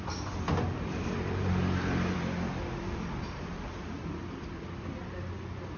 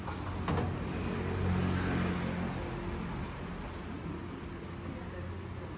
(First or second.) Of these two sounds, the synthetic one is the first